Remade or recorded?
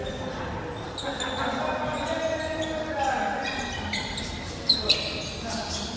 recorded